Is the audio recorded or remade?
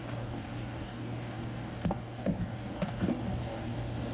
remade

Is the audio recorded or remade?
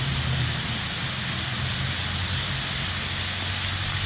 recorded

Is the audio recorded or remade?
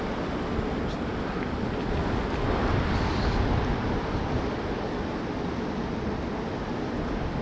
recorded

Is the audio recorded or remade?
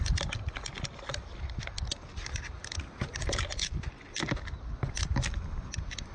recorded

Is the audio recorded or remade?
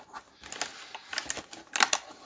recorded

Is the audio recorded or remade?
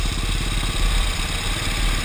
recorded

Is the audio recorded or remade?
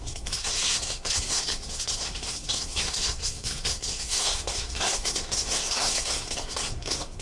remade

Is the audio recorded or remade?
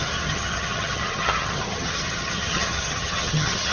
remade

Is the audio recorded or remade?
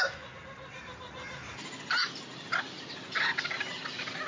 recorded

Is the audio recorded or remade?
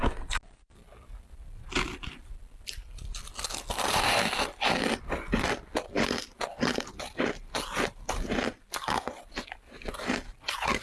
recorded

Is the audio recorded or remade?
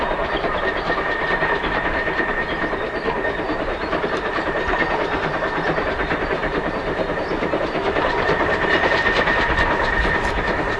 remade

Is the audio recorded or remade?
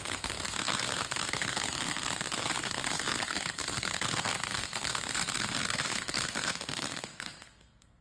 remade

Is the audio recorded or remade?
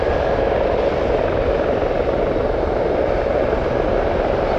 recorded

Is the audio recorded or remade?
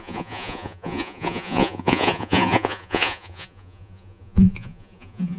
remade